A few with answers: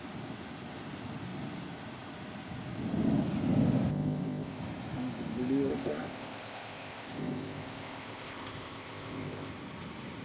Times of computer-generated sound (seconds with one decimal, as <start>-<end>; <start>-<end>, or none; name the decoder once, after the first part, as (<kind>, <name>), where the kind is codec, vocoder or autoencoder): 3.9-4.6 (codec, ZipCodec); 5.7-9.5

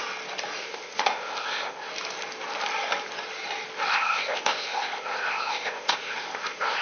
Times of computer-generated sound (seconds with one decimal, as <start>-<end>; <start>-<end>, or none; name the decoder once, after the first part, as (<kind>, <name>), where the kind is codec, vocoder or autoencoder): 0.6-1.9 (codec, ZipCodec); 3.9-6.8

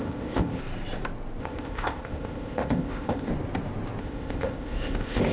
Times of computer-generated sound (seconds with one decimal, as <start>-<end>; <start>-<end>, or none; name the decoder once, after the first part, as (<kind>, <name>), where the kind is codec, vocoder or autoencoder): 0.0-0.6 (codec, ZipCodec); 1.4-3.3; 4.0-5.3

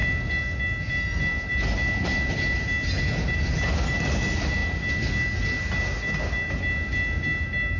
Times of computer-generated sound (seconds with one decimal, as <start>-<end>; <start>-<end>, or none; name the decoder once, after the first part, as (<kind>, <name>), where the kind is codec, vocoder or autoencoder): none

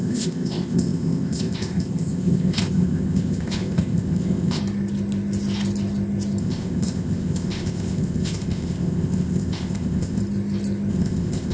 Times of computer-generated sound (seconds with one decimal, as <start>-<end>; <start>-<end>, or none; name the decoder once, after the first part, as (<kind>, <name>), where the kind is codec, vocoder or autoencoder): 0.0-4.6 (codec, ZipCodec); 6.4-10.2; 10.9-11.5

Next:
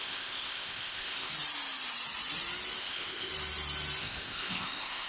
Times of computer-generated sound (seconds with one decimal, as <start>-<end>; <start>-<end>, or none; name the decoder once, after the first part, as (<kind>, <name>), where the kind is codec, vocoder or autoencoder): 0.0-1.3 (codec, ZipCodec); 2.8-3.3; 4.0-5.1

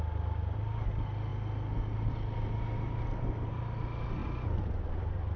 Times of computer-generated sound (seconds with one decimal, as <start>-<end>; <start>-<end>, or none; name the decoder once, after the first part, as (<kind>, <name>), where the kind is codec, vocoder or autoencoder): none

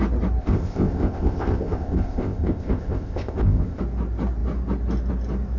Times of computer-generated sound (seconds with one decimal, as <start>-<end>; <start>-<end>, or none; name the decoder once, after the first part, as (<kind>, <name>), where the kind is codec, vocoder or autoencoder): 0.4-3.8 (codec, ZipCodec)